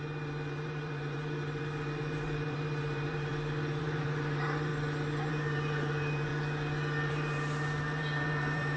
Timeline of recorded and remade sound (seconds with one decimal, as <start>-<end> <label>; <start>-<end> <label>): 0.0-3.3 remade; 3.3-3.8 recorded; 3.8-4.7 remade; 4.7-5.3 recorded; 5.3-6.3 remade; 6.3-7.1 recorded; 7.1-8.8 remade